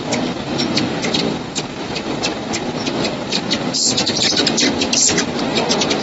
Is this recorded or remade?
recorded